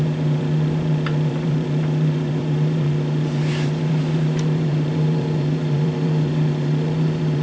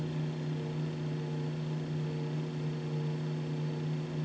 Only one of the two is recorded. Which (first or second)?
second